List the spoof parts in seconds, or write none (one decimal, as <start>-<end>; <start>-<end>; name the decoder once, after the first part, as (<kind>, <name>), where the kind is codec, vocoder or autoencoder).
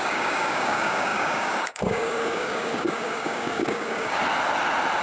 0.0-4.2 (codec, DAC)